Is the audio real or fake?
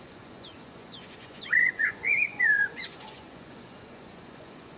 fake